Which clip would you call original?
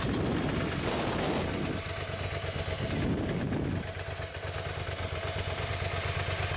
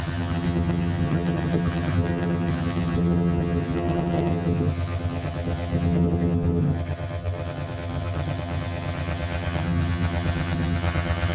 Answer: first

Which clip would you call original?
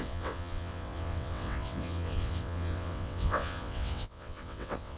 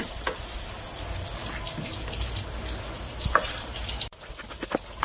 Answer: second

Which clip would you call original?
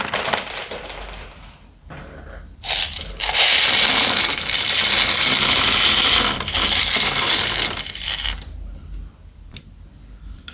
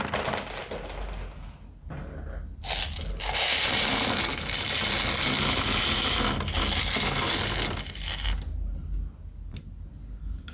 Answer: second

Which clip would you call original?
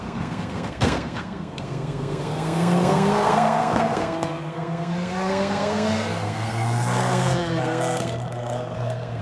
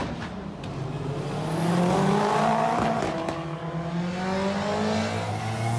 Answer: second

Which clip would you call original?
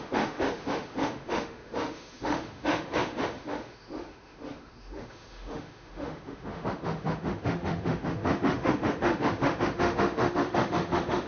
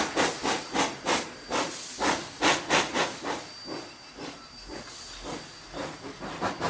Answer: second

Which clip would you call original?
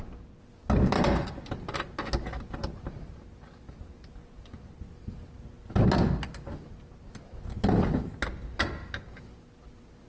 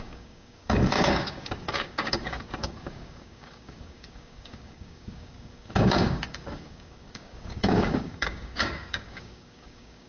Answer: first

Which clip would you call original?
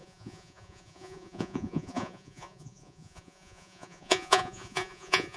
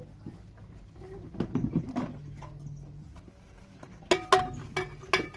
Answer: second